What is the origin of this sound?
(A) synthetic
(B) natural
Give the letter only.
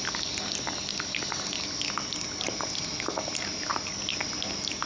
B